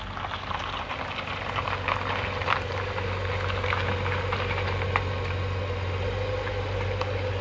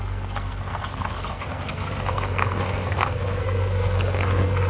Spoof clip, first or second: second